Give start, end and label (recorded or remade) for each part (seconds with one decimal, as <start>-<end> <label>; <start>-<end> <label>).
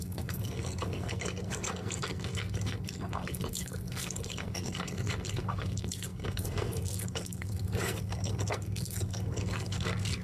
0.0-10.2 remade